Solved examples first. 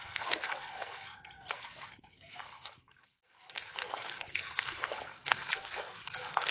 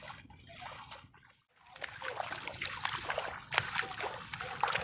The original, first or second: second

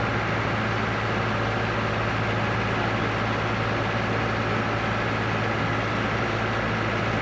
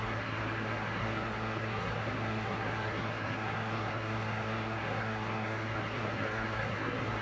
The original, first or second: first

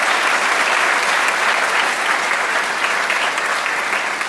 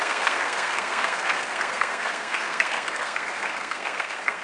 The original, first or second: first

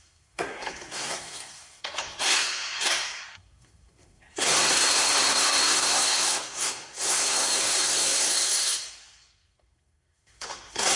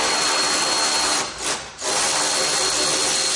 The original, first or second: second